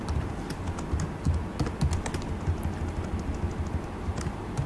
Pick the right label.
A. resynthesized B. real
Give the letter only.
B